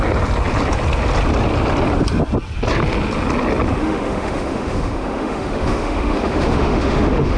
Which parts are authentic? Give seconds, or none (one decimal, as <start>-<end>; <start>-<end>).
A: 0.0-3.8